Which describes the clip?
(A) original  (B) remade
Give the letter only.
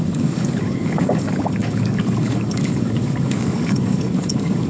B